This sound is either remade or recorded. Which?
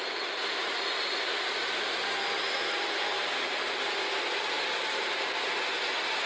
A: recorded